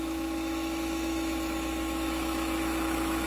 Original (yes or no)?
no